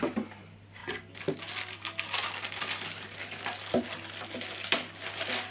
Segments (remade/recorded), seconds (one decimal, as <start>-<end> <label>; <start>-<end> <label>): 0.0-5.5 recorded